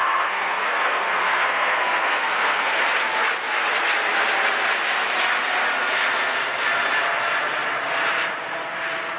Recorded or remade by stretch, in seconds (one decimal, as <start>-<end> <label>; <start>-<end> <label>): 0.0-2.8 remade; 2.8-9.2 recorded